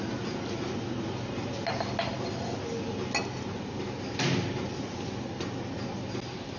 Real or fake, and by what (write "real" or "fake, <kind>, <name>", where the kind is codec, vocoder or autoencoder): real